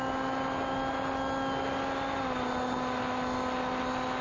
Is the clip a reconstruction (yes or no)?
no